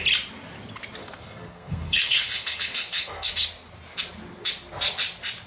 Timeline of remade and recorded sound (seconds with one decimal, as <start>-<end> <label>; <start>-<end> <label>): 0.0-1.0 recorded; 1.0-3.3 remade; 3.3-5.5 recorded

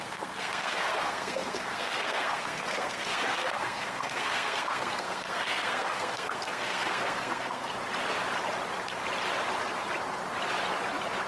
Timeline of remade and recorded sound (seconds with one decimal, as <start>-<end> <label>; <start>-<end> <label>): 0.0-7.7 remade; 7.7-11.3 recorded

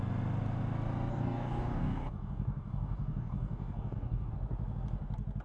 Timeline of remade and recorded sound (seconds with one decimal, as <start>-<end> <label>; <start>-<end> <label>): 0.0-1.1 recorded; 1.1-4.3 remade; 4.3-5.4 recorded

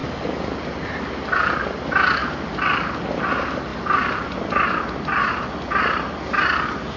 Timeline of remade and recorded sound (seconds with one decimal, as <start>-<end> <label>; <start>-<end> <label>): 0.0-7.0 recorded

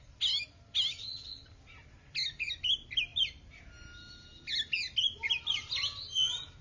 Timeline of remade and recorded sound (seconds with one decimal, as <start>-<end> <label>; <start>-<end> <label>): 0.0-3.1 recorded; 3.1-3.6 remade; 3.6-6.6 recorded

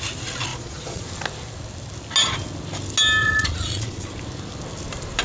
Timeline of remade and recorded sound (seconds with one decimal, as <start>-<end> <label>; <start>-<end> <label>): 0.0-0.5 recorded; 0.5-1.0 remade; 1.0-3.2 recorded; 3.2-4.1 remade; 4.1-5.2 recorded

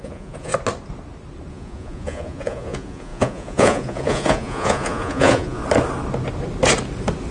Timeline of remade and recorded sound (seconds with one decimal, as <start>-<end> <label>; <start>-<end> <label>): 0.0-0.5 remade; 0.5-1.5 recorded; 1.5-5.6 remade; 5.6-7.3 recorded